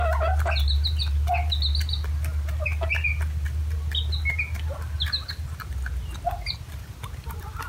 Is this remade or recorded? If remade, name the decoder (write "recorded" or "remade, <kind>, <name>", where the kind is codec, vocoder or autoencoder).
recorded